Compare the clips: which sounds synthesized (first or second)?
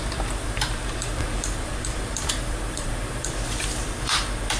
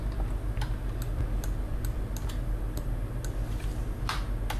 first